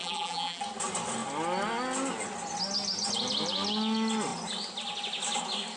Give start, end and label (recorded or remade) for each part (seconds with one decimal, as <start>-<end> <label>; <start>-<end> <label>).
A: 0.0-0.6 remade; 0.6-5.8 recorded